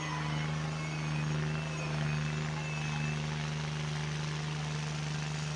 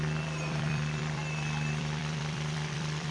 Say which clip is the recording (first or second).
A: first